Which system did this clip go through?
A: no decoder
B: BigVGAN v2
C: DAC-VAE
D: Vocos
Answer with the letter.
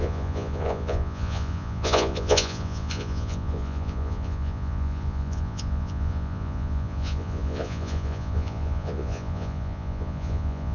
D